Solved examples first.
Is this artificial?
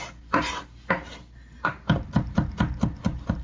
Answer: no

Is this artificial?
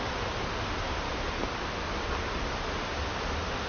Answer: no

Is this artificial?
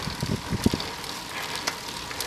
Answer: no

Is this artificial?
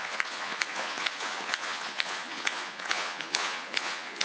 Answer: yes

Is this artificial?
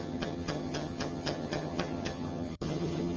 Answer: yes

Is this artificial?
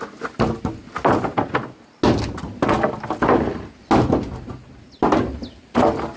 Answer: no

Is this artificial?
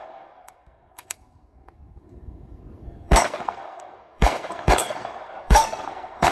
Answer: yes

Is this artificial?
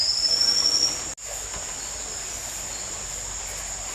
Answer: no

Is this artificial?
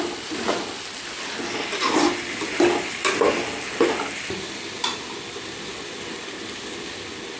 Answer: no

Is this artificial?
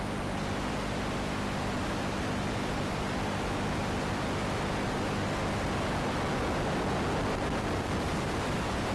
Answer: no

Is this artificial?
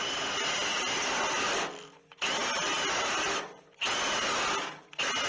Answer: no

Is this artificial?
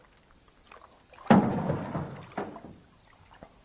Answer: no